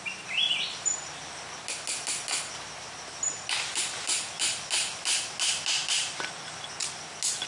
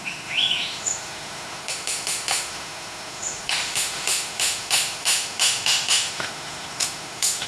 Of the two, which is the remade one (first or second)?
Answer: second